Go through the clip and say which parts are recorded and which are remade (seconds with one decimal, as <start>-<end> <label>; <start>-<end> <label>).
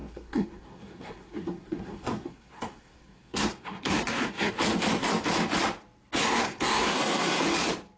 0.0-4.5 remade; 4.5-6.2 recorded; 6.2-7.4 remade; 7.4-8.0 recorded